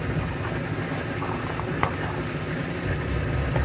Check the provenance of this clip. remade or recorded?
recorded